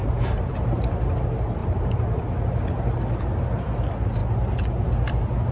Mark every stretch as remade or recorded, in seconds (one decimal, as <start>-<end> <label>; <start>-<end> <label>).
0.0-0.5 remade; 0.5-1.6 recorded; 1.6-2.2 remade; 2.2-4.2 recorded; 4.2-4.9 remade; 4.9-5.5 recorded